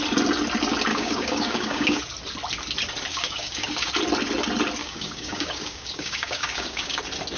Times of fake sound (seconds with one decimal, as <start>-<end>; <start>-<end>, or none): 0.9-2.0; 3.1-3.9; 4.8-7.0